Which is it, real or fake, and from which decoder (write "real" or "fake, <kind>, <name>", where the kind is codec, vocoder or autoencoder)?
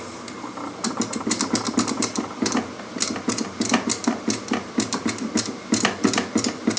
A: real